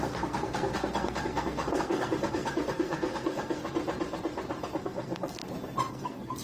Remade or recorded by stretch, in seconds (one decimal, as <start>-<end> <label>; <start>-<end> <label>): 0.0-3.6 remade; 3.6-4.8 recorded; 4.8-5.4 remade; 5.4-5.9 recorded; 5.9-6.4 remade

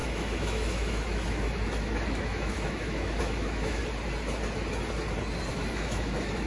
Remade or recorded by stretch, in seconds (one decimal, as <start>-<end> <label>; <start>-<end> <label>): 0.0-3.8 remade; 3.8-5.5 recorded; 5.5-6.5 remade

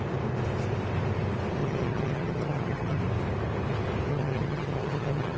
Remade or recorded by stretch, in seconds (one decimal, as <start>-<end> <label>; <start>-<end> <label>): 0.0-1.6 recorded; 1.6-3.0 remade; 3.0-4.1 recorded; 4.1-5.4 remade

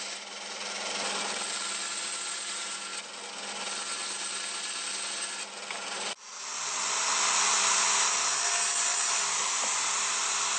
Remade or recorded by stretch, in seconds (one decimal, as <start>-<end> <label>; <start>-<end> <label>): 0.0-10.6 recorded

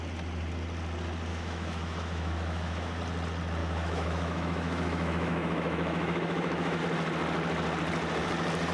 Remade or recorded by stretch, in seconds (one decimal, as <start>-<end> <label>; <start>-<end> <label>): 0.0-1.3 recorded; 1.3-3.0 remade; 3.0-3.6 recorded; 3.6-6.8 remade; 6.8-8.7 recorded